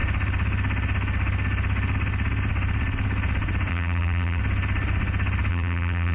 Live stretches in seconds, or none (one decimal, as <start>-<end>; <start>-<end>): 0.0-3.7; 4.4-5.5